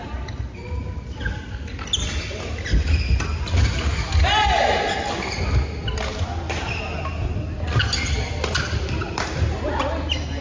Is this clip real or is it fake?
real